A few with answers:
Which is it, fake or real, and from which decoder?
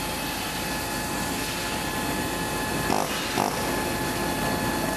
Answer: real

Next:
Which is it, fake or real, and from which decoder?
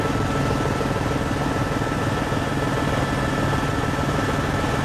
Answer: real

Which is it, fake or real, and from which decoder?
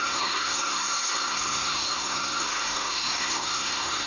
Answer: fake, codec, SNAC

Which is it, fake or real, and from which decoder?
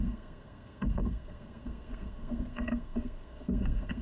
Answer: fake, codec, SNAC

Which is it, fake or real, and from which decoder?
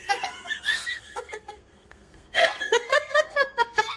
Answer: fake, codec, SNAC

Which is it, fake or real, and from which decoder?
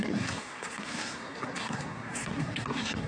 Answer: fake, codec, SNAC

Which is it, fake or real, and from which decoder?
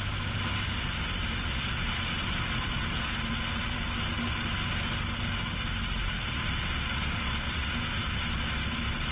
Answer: real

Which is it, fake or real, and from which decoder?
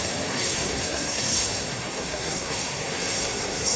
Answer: fake, codec, SNAC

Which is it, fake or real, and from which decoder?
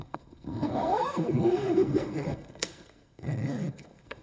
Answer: fake, codec, SNAC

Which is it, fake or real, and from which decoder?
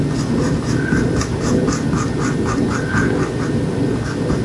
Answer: real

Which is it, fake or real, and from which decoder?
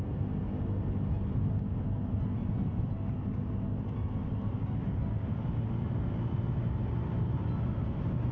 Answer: real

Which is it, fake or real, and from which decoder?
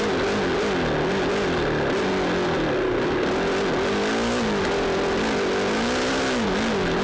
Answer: real